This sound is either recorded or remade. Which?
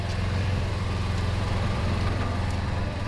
remade